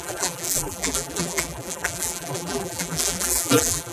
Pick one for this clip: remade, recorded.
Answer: remade